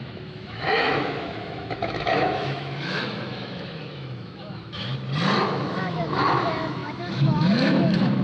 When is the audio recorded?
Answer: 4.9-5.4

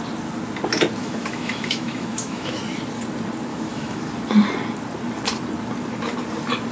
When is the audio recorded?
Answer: 0.0-1.0; 2.6-3.5; 4.1-6.7

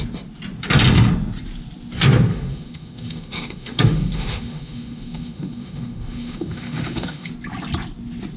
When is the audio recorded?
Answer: 0.0-2.3; 7.3-8.4

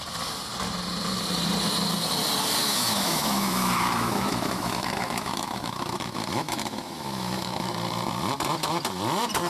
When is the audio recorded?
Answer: 0.0-2.6; 7.7-9.5

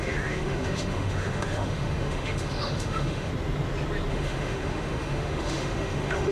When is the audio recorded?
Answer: 3.3-4.1

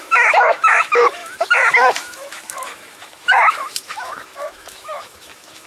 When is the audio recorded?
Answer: none

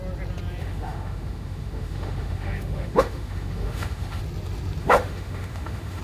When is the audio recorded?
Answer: 0.0-0.6; 4.2-4.8